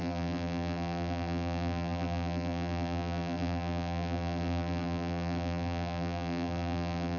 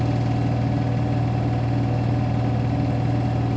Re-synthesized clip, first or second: first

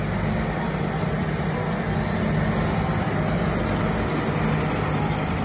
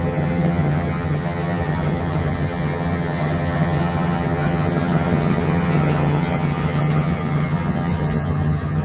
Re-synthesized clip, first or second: second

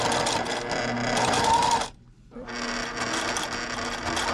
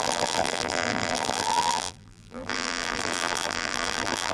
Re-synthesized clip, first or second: second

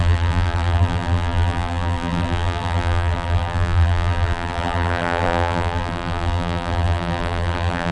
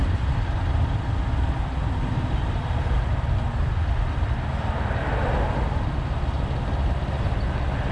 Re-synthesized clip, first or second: first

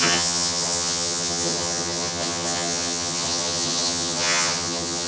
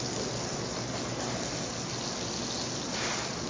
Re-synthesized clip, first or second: first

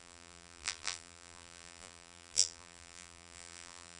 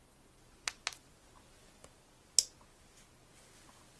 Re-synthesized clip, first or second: first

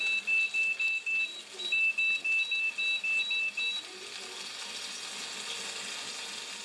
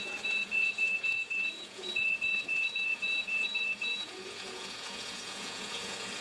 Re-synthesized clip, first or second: second